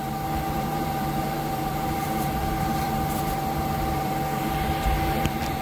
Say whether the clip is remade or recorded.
remade